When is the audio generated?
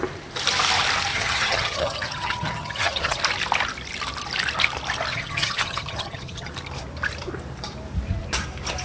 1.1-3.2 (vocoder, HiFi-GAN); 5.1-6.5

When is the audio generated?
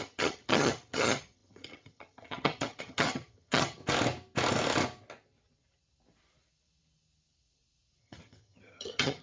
0.0-3.8 (vocoder, HiFi-GAN); 8.0-9.2